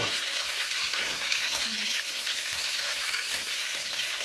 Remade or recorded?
remade